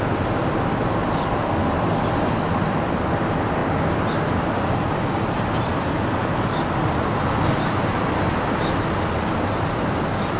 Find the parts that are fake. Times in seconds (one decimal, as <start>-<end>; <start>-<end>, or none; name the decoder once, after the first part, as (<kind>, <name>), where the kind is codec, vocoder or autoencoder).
none